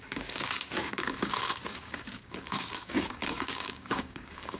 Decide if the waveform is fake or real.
fake